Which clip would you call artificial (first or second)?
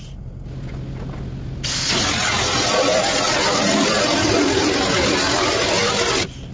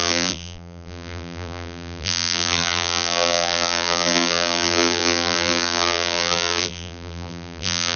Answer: second